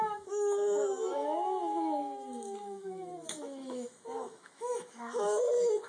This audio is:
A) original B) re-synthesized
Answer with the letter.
B